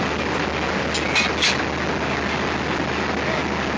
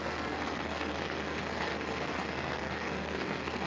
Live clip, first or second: first